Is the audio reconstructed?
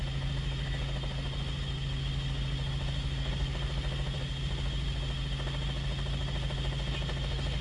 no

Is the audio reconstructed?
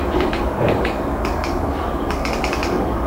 yes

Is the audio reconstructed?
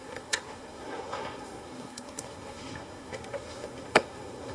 yes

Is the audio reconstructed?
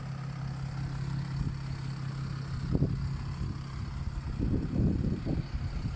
no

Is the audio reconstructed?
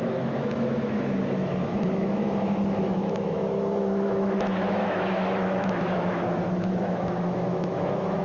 yes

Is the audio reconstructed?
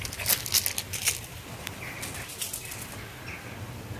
no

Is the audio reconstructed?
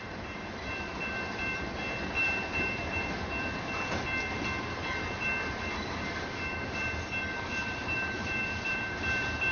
yes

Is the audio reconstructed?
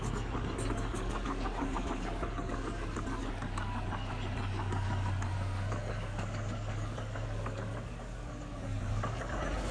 yes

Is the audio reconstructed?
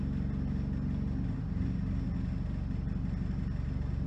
no